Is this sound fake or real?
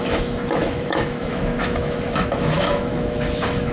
fake